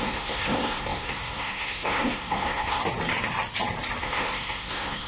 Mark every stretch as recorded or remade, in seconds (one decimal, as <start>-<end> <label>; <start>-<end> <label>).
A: 0.0-2.8 remade; 2.8-4.0 recorded; 4.0-5.1 remade